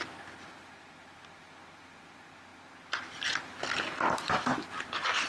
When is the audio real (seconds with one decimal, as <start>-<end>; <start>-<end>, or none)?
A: 0.0-5.3